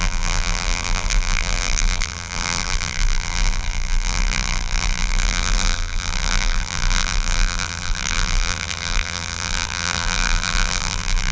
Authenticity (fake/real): fake